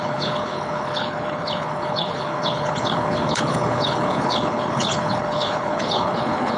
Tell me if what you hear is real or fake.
fake